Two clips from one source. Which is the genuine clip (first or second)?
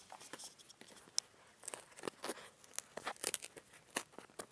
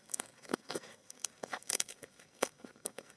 first